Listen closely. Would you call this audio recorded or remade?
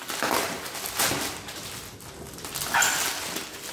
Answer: recorded